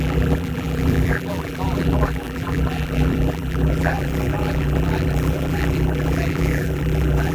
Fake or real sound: fake